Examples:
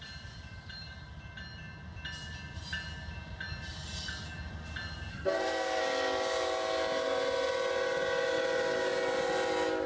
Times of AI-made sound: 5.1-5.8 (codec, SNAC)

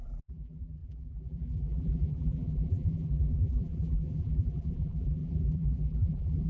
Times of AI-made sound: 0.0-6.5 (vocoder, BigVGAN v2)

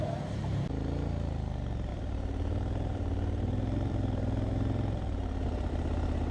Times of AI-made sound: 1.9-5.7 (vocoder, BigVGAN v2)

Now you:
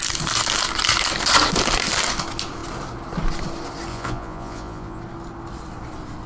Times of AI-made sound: 3.9-5.0 (vocoder, Vocos)

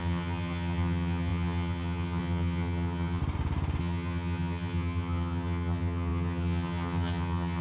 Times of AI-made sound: 0.0-3.2 (vocoder, HiFi-GAN); 3.8-7.6

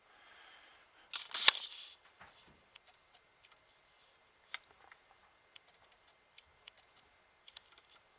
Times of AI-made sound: none